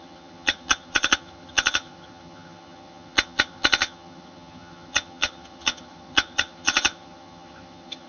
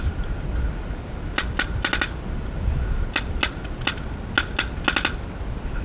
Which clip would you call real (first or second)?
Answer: second